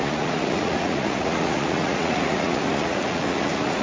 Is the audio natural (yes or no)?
no